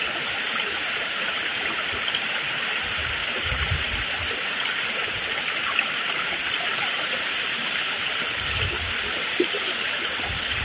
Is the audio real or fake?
fake